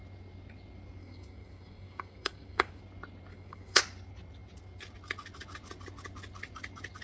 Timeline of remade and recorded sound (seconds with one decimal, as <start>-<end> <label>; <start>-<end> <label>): 0.0-1.0 recorded; 1.0-2.8 remade; 2.8-3.3 recorded; 3.3-3.8 remade; 3.8-7.0 recorded